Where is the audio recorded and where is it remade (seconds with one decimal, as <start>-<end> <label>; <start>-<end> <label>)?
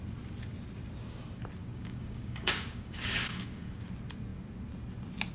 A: 0.0-1.6 recorded; 1.6-3.9 remade; 3.9-5.3 recorded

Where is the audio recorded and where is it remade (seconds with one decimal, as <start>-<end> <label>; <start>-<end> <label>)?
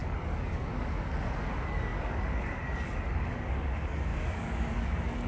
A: 0.0-5.3 remade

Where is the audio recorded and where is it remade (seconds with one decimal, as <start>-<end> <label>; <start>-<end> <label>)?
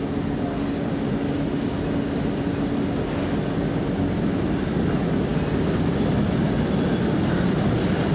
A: 0.0-8.1 recorded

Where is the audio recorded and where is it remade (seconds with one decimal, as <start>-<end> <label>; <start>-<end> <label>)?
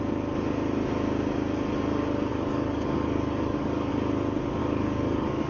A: 0.0-2.3 recorded; 2.3-3.9 remade; 3.9-4.6 recorded; 4.6-5.5 remade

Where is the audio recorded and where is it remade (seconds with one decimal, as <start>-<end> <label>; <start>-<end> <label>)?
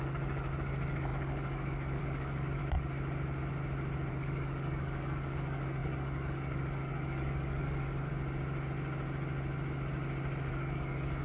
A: 0.0-2.6 remade; 2.6-4.1 recorded; 4.1-8.1 remade; 8.1-10.5 recorded; 10.5-11.2 remade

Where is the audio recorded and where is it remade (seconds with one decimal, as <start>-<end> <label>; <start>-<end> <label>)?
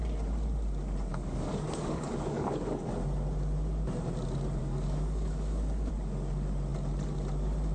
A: 0.0-1.1 recorded; 1.1-2.9 remade; 2.9-4.6 recorded; 4.6-5.9 remade; 5.9-7.7 recorded